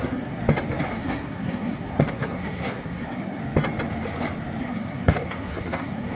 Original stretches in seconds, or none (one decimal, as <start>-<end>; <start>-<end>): 0.4-0.9; 3.4-4.6